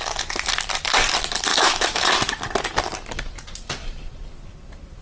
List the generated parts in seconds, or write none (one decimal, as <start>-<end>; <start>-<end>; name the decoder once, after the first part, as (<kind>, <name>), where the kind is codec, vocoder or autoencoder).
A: 1.5-2.1 (autoencoder, DAC-VAE)